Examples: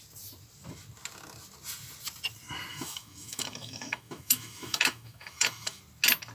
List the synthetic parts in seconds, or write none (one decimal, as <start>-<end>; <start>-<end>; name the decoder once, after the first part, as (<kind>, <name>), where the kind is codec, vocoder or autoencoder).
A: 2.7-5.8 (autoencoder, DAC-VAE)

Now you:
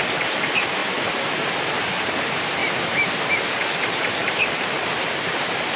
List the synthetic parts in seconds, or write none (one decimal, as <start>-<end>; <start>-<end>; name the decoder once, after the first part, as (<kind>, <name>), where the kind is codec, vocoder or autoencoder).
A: 0.0-5.8 (vocoder, BigVGAN v2)

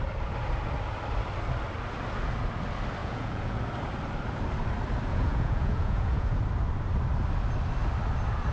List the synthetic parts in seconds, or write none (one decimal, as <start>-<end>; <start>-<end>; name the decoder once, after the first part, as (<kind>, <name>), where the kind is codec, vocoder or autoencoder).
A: 3.0-3.6 (vocoder, Vocos); 5.1-6.4

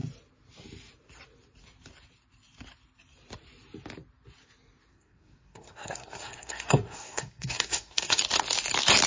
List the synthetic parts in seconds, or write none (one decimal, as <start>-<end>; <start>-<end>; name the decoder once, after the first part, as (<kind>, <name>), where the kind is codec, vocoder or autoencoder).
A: 4.9-8.2 (codec, SNAC)